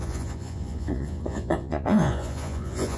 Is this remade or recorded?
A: remade